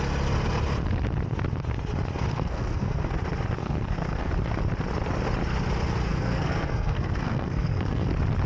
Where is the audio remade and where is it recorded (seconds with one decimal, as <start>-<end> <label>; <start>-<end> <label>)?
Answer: 0.0-2.3 recorded; 2.3-3.1 remade; 3.1-3.6 recorded; 3.6-4.3 remade; 4.3-6.1 recorded; 6.1-8.1 remade; 8.1-8.5 recorded